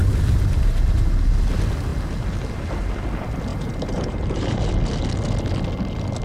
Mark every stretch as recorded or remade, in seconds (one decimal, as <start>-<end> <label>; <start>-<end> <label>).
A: 0.0-3.5 recorded; 3.5-4.6 remade; 4.6-6.2 recorded